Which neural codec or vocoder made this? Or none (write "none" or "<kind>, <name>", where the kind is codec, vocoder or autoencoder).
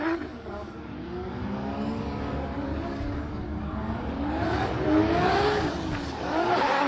codec, DAC